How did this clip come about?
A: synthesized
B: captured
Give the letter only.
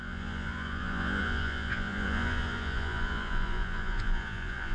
A